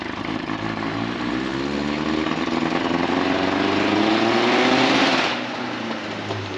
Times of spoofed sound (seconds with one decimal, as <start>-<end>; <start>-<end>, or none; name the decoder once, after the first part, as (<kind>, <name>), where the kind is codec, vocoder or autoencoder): 0.0-1.5 (vocoder, BigVGAN v2); 5.3-6.6